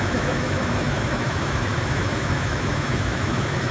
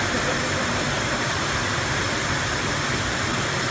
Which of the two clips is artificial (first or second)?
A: first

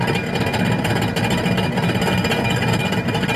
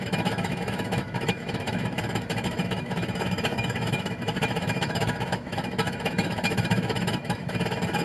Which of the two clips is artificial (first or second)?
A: second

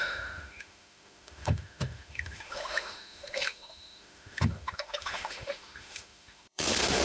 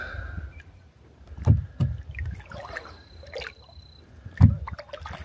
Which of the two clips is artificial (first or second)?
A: first